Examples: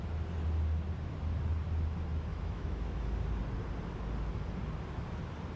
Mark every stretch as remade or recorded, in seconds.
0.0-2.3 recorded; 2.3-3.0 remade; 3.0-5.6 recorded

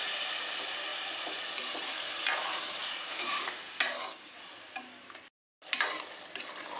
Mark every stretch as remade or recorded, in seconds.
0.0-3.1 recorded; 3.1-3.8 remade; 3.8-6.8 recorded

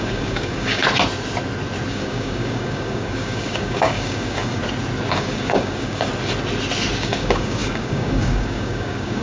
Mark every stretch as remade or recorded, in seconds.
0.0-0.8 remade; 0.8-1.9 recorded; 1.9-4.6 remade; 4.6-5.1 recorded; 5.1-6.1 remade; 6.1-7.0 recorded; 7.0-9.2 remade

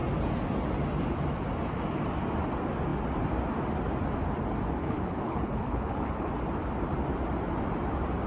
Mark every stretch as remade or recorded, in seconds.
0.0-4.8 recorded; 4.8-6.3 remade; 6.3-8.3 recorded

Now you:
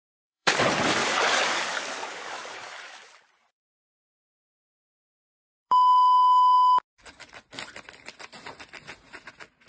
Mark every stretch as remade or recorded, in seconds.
0.0-0.6 remade; 0.6-1.0 recorded; 1.0-3.1 remade; 3.1-4.8 recorded; 4.8-7.2 remade; 7.2-9.7 recorded

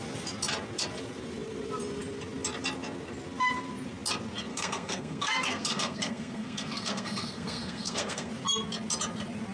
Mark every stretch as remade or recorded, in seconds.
0.0-4.5 recorded; 4.5-8.3 remade; 8.3-9.5 recorded

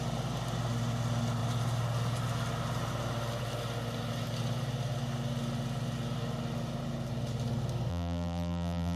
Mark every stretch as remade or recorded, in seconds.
0.0-7.9 recorded; 7.9-9.0 remade